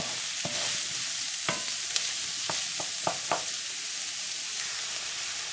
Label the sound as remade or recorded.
recorded